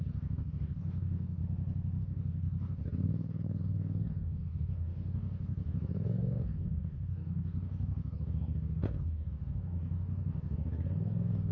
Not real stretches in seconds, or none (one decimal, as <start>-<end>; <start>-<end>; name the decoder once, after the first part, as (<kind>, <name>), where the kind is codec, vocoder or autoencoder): 0.0-1.4 (codec, DAC); 2.0-11.5